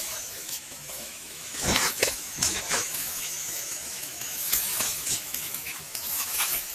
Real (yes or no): no